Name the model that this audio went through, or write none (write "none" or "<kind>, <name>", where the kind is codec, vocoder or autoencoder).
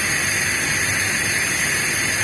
none